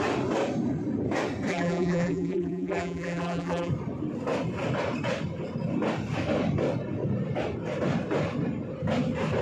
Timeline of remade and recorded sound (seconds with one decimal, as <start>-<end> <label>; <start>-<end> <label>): 0.0-1.5 recorded; 1.5-3.7 remade; 3.7-9.4 recorded